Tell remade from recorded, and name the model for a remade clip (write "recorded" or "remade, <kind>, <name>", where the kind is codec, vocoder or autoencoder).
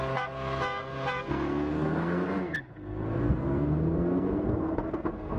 remade, codec, SNAC